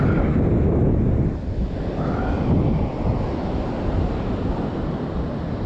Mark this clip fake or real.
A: real